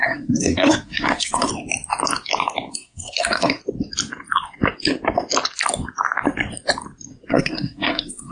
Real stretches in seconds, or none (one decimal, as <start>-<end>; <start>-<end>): 1.5-2.7; 3.6-7.3